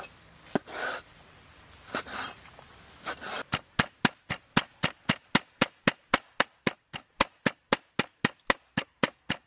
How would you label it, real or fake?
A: real